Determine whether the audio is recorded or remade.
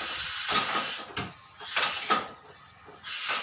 recorded